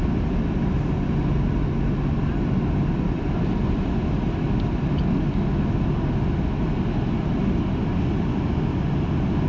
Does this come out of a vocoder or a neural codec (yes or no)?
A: no